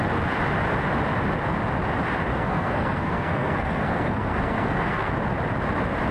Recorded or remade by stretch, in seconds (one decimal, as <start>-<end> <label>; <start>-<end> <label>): 0.0-2.3 recorded; 2.3-5.1 remade; 5.1-6.1 recorded